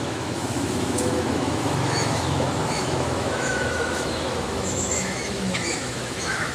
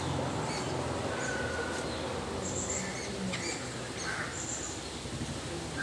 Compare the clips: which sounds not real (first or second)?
first